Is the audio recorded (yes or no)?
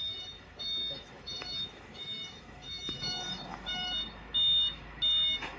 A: no